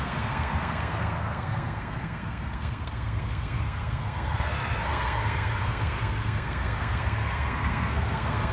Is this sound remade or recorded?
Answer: remade